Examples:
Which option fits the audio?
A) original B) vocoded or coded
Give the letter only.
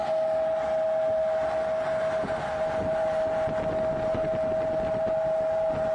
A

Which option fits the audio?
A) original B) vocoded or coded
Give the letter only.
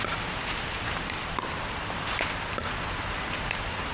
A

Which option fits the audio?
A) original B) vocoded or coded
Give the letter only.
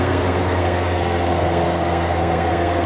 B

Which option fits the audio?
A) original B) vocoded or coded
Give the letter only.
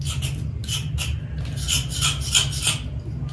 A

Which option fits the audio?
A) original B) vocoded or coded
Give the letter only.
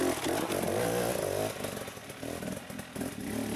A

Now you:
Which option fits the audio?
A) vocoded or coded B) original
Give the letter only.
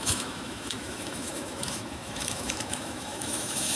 A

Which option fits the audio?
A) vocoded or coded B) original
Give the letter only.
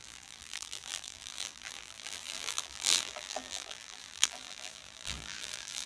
A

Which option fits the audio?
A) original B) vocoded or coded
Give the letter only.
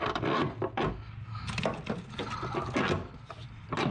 A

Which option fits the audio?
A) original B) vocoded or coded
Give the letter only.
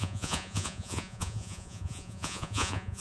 B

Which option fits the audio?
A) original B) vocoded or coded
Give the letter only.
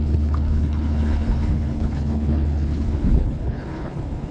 B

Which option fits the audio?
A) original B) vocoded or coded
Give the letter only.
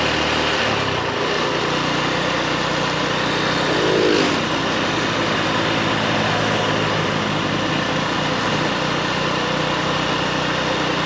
A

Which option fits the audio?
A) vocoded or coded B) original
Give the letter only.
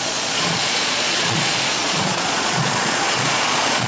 A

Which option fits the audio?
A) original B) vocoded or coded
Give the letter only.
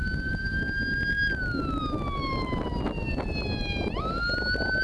A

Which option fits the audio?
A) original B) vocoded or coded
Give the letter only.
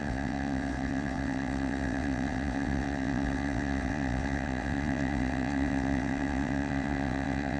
B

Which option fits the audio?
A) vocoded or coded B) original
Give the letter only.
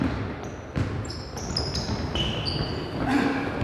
B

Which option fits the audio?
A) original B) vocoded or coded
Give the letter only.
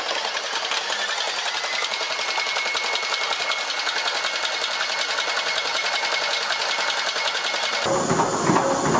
A